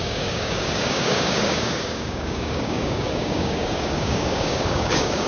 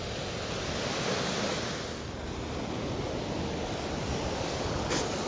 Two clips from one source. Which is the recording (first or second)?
second